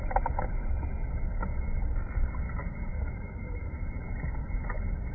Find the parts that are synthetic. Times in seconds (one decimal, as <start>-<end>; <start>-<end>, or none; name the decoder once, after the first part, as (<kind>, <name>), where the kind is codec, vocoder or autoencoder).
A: 2.9-3.8 (codec, DAC)